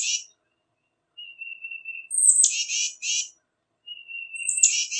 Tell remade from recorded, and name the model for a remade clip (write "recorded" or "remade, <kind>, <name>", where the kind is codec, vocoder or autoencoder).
recorded